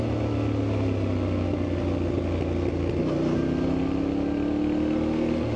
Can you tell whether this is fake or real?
real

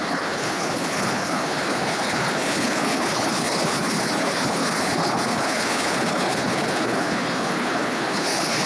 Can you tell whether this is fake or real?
fake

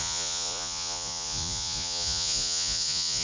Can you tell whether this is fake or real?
fake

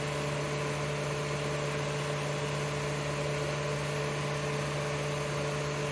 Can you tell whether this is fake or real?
real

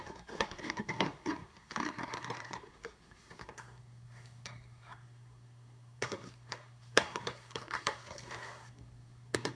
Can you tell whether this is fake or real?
fake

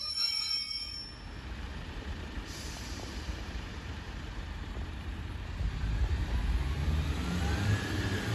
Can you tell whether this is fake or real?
fake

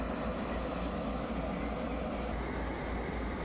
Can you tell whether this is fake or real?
real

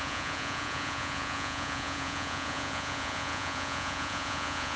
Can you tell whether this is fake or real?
fake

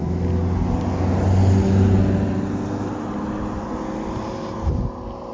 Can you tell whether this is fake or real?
real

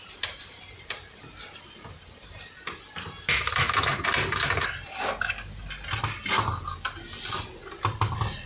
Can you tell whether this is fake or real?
real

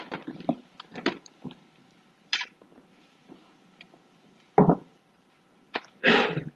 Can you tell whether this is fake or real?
fake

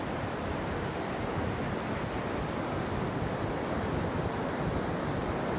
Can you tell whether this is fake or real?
real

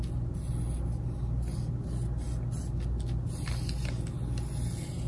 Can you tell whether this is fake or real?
real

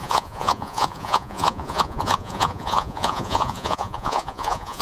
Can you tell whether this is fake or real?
fake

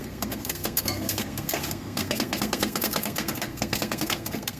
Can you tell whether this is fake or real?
fake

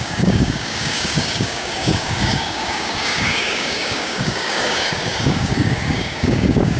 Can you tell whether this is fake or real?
fake